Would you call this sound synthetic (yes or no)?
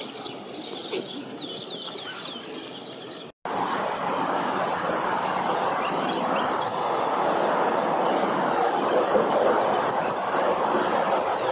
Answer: no